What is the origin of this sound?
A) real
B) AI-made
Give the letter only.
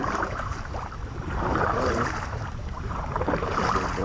B